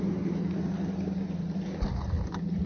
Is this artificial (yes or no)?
no